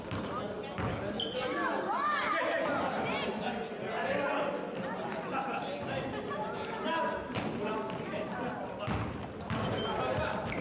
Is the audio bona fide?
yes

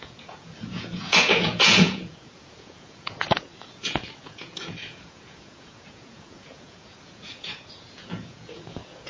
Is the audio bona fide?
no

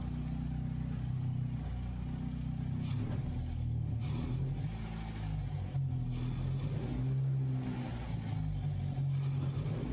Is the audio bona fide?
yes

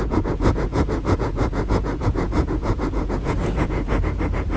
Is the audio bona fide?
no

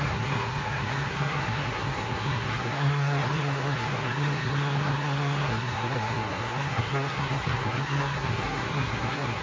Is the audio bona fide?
no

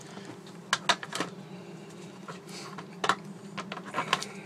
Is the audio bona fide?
yes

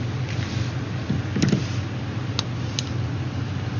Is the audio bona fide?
yes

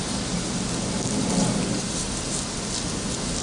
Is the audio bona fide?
yes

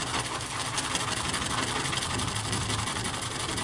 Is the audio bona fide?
yes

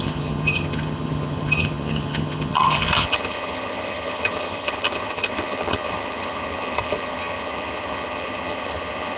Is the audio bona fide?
no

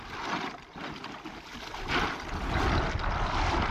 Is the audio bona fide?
yes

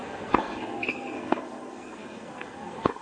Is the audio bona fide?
no